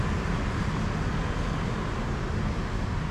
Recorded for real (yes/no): yes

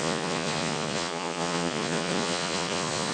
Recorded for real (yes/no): no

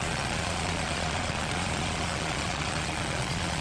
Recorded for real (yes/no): no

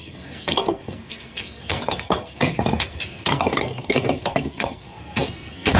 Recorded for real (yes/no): no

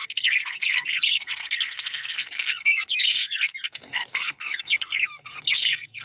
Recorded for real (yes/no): no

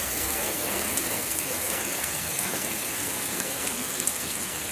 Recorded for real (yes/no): no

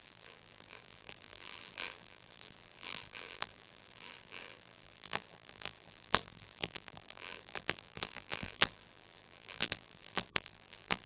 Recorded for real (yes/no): no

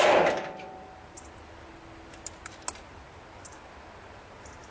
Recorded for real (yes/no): yes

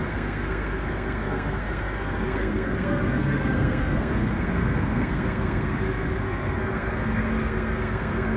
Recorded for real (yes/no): no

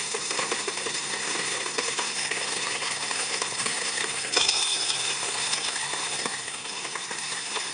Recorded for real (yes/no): no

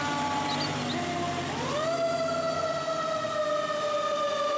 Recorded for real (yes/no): yes